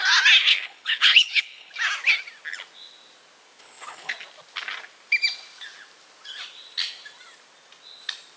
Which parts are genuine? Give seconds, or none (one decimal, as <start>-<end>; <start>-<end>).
0.0-0.5; 1.7-3.6; 4.1-8.4

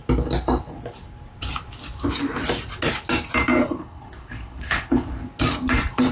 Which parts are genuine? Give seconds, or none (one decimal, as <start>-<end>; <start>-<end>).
0.0-3.8; 5.2-6.1

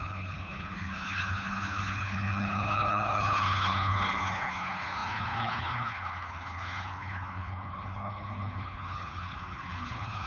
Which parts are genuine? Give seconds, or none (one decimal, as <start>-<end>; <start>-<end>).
none

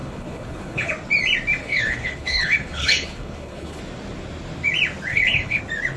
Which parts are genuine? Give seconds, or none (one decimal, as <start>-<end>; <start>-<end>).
0.9-1.6; 3.8-5.1; 5.6-6.0

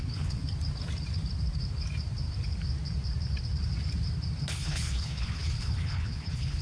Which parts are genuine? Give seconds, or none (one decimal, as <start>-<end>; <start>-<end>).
0.4-4.4

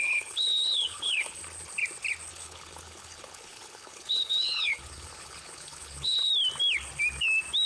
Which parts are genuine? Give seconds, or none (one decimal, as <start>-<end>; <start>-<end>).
1.4-2.3; 6.3-7.7